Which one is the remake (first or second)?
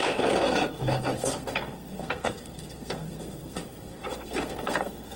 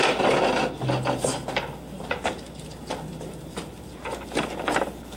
first